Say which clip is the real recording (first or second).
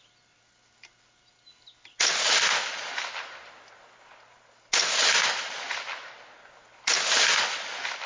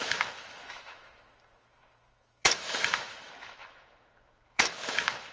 first